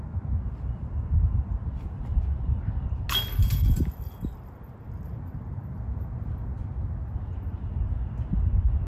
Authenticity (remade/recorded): recorded